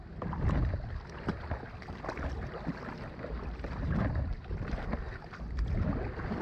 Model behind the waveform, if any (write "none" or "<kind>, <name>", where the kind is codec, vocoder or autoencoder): none